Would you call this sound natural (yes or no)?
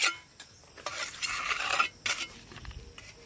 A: no